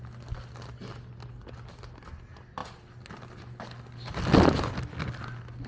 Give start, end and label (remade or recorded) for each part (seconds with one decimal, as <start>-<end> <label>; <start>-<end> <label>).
0.0-5.7 recorded